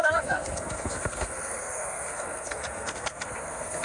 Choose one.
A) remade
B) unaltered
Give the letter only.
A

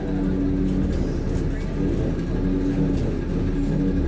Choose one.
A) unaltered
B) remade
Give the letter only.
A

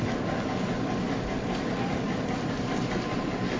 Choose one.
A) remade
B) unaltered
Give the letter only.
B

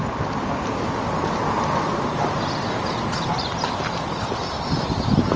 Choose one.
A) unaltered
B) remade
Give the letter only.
A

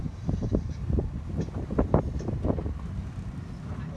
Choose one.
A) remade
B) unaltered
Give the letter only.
B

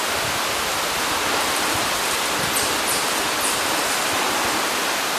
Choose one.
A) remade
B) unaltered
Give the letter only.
B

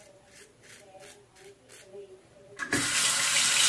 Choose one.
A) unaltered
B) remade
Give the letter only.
A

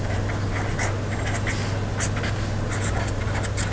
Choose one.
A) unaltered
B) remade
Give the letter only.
A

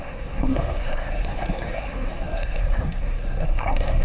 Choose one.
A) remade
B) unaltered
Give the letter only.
A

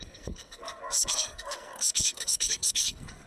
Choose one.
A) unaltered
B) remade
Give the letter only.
B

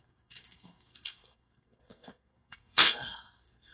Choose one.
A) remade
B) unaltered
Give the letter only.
A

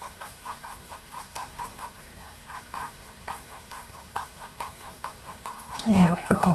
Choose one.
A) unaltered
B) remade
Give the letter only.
B